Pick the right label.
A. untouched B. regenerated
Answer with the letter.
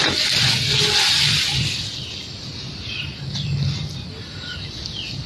A